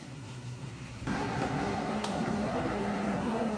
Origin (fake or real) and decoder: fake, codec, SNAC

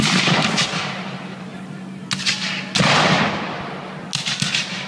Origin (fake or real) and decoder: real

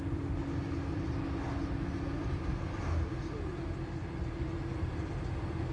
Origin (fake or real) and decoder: real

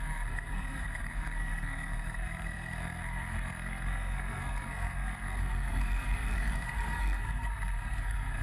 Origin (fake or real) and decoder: fake, codec, SNAC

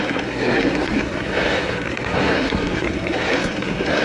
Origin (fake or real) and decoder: fake, codec, SNAC